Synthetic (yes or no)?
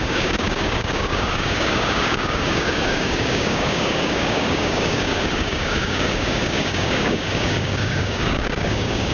yes